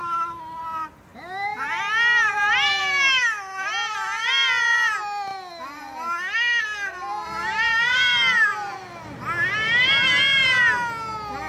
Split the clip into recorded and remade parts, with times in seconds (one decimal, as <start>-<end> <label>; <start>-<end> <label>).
0.0-0.6 remade; 0.6-11.5 recorded